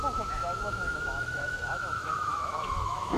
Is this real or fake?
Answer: fake